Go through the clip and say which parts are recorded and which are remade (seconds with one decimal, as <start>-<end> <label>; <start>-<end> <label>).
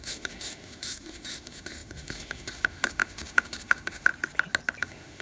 0.0-4.1 remade; 4.1-4.8 recorded; 4.8-5.2 remade